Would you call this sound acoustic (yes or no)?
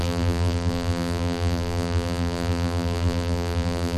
no